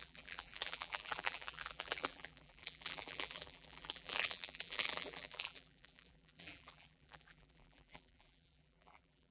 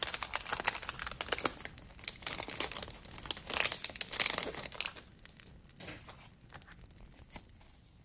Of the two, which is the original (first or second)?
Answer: second